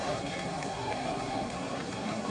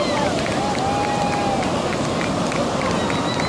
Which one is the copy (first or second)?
first